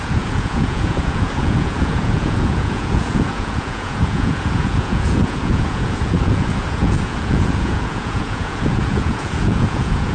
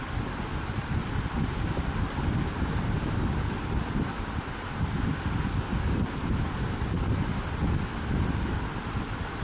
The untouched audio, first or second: second